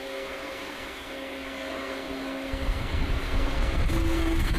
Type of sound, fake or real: fake